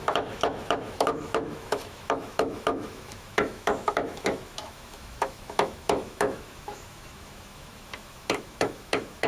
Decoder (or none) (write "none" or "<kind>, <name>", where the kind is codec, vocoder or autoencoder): autoencoder, DAC-VAE